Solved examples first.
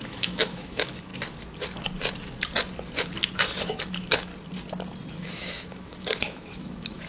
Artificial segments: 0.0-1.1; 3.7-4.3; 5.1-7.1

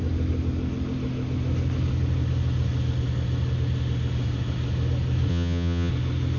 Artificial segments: 5.3-5.9

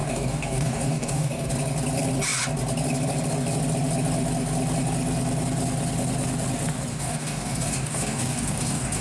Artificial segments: 0.0-1.5; 6.9-9.0

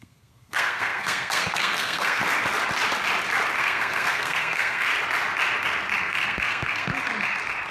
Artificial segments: 0.0-2.2; 3.6-4.9; 6.0-6.9

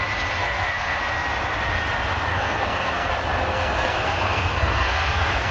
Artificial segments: 0.4-1.0; 2.3-3.1; 3.5-5.5

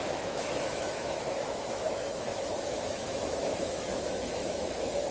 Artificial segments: 0.0-5.1

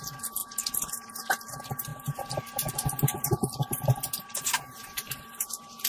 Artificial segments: 1.9-5.4